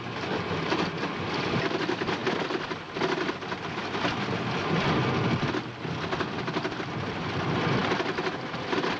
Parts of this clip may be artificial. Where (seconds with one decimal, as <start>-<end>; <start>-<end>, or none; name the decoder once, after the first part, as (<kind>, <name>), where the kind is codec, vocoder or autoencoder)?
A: none